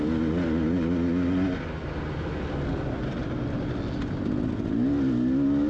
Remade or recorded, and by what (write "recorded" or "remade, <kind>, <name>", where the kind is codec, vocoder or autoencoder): recorded